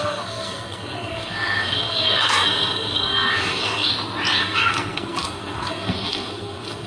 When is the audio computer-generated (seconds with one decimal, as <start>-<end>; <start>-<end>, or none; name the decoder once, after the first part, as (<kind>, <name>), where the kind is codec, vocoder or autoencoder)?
0.0-3.9 (codec, SNAC); 4.4-6.9